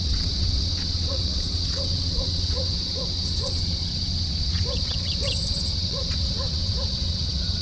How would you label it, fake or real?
fake